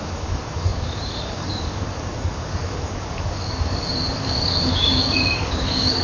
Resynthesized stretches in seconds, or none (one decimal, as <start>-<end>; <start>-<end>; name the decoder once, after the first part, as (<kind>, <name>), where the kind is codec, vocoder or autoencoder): 0.0-6.0 (codec, DAC)